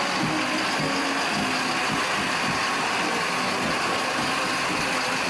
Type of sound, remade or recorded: recorded